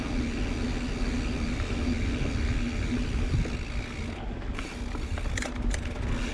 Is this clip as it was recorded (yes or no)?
yes